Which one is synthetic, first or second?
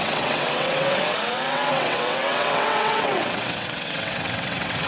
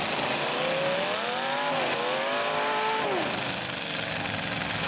first